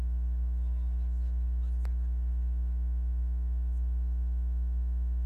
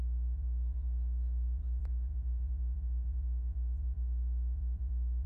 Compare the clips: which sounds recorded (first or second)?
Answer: first